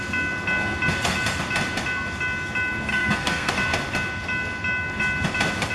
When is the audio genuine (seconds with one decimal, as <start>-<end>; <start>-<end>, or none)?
0.0-2.9; 3.5-5.7